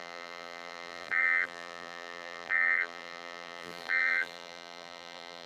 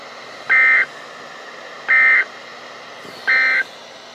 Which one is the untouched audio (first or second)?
second